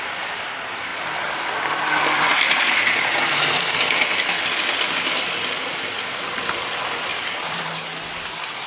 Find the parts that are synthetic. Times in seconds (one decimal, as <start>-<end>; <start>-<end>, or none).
7.1-7.6